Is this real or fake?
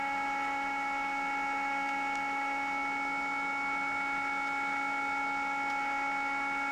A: fake